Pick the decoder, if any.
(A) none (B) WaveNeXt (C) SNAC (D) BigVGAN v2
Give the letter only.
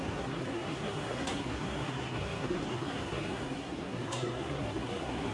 C